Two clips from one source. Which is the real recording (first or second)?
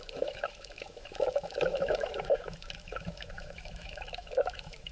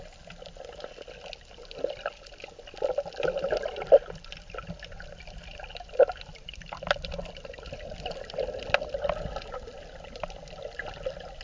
second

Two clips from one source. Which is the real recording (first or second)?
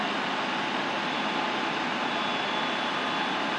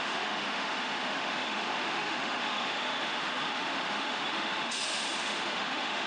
first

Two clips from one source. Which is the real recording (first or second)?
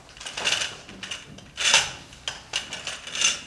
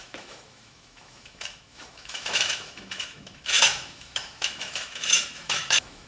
first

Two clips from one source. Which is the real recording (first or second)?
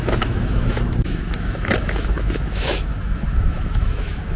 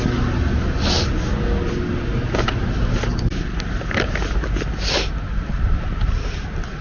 second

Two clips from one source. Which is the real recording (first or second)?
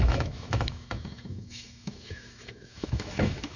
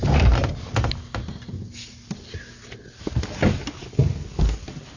second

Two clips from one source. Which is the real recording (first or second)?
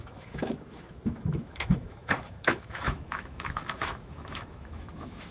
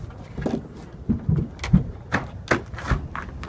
second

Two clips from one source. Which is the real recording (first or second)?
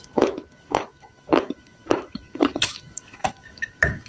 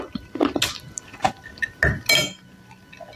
second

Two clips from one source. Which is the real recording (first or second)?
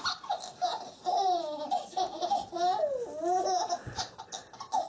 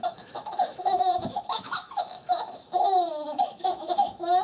first